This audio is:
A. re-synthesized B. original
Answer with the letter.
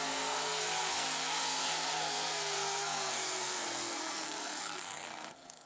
A